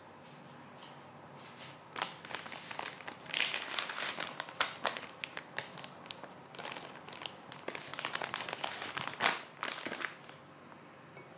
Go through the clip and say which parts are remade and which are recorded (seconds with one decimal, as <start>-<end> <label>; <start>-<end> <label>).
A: 0.0-11.4 recorded